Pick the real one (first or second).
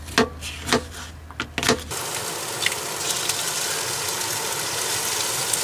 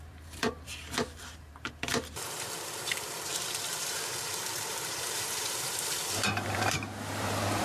first